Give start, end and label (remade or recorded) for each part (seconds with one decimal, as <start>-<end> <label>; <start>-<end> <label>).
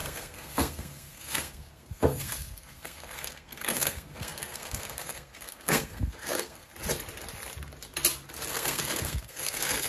0.0-6.7 remade; 6.7-8.5 recorded; 8.5-9.9 remade